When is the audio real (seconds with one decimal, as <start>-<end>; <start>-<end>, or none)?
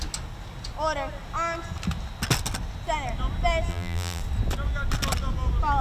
0.0-3.7; 4.2-5.8